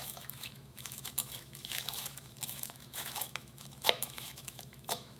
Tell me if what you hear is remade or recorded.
remade